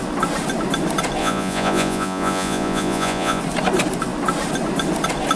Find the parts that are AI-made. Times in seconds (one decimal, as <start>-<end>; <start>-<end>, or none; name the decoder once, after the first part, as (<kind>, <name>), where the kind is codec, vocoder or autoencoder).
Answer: 1.2-3.4 (vocoder, Vocos)